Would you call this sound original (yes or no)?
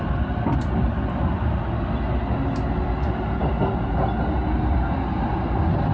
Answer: yes